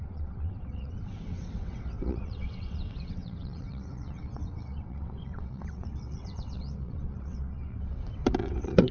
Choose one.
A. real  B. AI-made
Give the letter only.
B